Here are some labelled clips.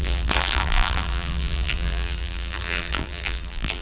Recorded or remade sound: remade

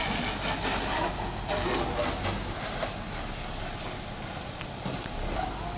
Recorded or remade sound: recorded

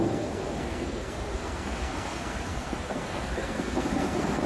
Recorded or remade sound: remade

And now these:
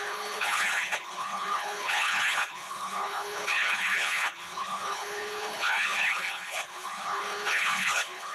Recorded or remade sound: remade